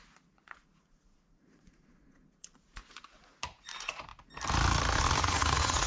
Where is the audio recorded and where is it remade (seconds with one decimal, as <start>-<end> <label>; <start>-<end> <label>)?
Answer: 0.0-4.1 remade; 4.1-5.2 recorded; 5.2-5.9 remade